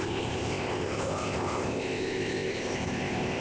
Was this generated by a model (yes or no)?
yes